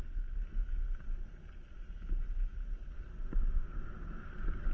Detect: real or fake real